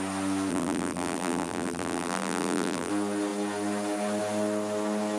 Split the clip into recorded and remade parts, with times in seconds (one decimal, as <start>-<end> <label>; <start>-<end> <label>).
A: 0.0-0.5 recorded; 0.5-2.9 remade; 2.9-5.2 recorded